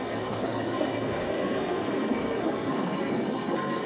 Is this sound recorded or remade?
remade